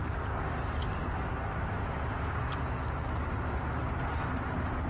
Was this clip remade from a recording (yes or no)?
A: no